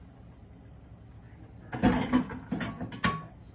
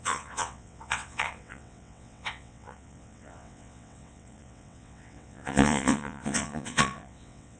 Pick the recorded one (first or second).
first